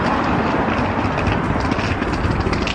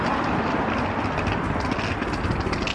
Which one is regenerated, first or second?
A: first